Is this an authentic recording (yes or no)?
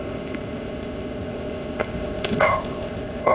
no